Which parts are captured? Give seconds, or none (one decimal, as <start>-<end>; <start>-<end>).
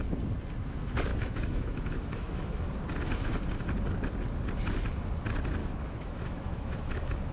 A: 0.0-1.1; 2.7-5.6